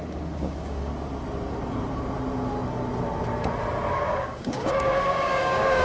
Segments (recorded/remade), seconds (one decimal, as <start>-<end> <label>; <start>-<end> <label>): 0.0-0.9 remade; 0.9-3.9 recorded; 3.9-5.8 remade